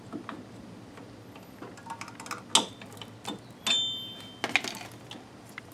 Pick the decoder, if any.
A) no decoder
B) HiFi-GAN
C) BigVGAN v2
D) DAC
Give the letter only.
A